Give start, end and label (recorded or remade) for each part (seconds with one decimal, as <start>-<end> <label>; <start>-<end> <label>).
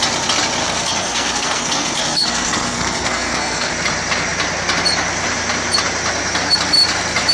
0.0-0.6 recorded; 0.6-3.7 remade; 3.7-7.3 recorded